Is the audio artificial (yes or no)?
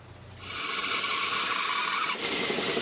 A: no